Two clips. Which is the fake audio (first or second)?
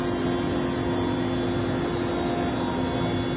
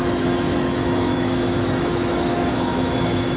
second